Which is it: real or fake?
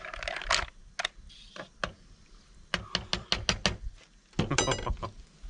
real